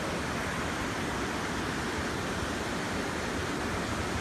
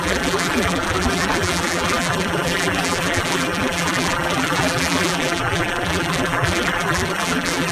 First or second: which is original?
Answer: first